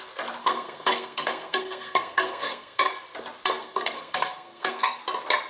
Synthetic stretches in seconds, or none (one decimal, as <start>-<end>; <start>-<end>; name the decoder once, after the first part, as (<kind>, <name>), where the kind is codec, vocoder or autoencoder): 0.4-2.9 (codec, SNAC); 3.6-5.0